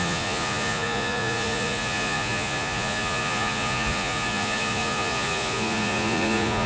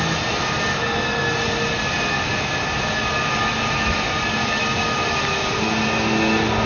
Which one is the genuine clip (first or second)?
second